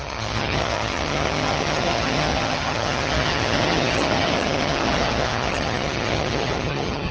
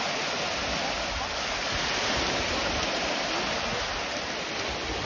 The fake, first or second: first